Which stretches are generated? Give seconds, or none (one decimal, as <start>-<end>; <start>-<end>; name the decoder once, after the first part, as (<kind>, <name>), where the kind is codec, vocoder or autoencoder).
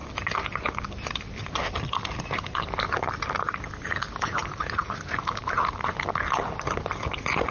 4.4-5.9 (vocoder, BigVGAN v2)